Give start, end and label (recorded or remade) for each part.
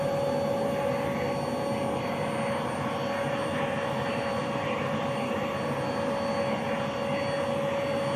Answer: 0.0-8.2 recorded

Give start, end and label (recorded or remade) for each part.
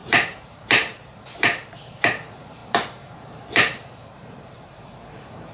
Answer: 0.0-5.5 remade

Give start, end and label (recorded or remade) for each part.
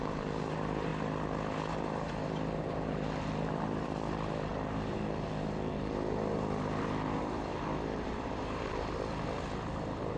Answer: 0.0-0.9 remade; 0.9-1.7 recorded; 1.7-10.2 remade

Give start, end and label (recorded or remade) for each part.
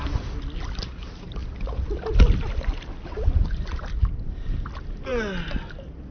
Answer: 0.0-6.1 recorded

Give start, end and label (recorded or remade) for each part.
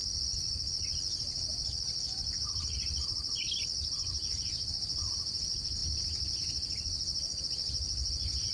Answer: 0.0-8.5 recorded